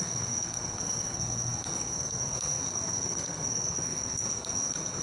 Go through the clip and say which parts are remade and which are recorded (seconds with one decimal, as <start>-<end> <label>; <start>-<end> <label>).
0.0-5.0 remade